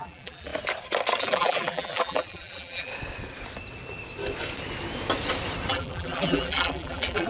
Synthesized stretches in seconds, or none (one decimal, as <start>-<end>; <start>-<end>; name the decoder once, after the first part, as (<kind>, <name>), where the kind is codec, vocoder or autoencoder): 0.0-0.5 (vocoder, BigVGAN v2); 1.2-2.9; 5.7-7.3